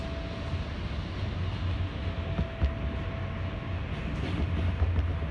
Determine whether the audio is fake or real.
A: real